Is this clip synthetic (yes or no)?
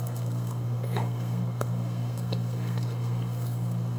yes